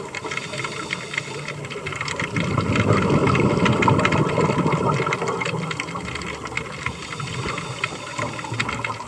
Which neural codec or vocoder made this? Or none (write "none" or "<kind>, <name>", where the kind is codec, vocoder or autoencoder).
none